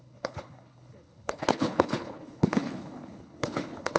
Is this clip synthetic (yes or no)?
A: yes